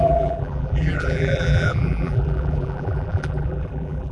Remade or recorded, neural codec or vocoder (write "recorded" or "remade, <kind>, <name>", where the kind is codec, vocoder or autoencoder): remade, vocoder, BigVGAN v2